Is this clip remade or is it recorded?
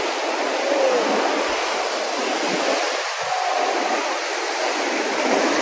recorded